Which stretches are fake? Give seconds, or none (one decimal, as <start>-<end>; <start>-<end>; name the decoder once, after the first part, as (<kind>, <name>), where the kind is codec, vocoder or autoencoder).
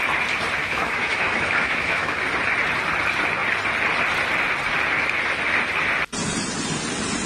0.6-2.2 (autoencoder, DAC-VAE)